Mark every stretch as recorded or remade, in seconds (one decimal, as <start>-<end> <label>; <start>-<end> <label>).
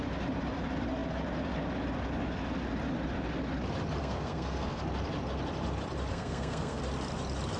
0.0-4.0 recorded; 4.0-4.8 remade; 4.8-6.1 recorded; 6.1-6.8 remade; 6.8-7.6 recorded